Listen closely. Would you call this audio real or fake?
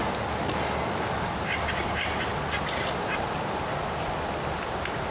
real